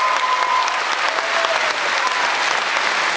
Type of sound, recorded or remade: recorded